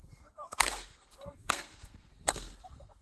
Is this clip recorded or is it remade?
remade